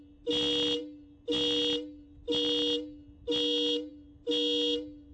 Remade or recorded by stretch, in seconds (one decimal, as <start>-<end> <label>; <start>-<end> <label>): 0.0-5.1 recorded